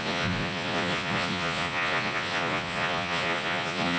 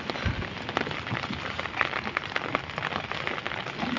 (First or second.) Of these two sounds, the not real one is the first